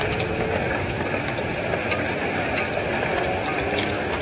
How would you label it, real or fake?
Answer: real